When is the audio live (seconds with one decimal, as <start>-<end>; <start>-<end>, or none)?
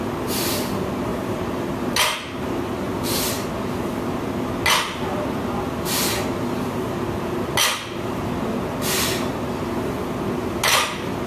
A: 0.0-11.3